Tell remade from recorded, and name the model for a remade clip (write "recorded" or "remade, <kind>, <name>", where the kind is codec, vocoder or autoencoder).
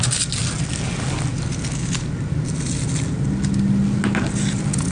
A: recorded